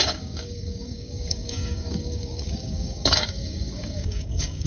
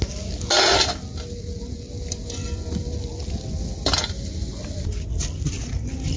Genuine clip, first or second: second